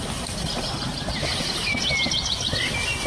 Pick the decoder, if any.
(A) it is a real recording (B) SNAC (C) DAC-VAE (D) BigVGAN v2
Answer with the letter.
A